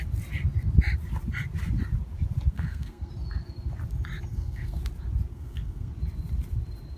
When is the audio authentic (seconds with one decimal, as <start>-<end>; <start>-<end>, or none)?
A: 0.0-2.5; 3.1-4.3; 4.8-5.3; 5.9-7.0